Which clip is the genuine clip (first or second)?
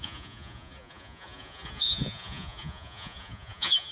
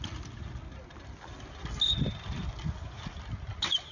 second